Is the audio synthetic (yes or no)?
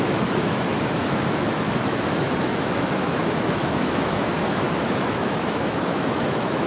yes